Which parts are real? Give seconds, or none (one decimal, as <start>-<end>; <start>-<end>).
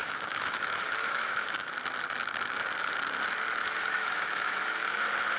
1.7-3.6; 5.0-5.4